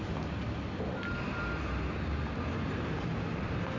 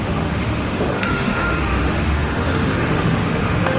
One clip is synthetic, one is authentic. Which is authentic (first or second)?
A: first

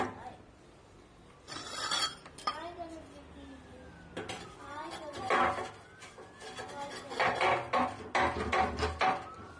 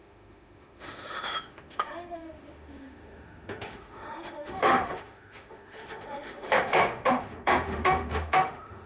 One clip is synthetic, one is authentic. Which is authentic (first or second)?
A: first